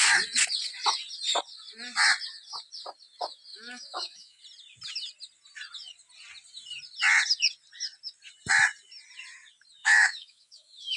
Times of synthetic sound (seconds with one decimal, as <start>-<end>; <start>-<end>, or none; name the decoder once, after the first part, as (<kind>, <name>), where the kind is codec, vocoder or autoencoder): 3.5-4.4 (autoencoder, DAC-VAE); 9.8-11.0